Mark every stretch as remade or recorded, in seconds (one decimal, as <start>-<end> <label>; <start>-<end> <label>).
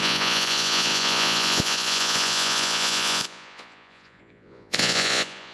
0.0-5.5 remade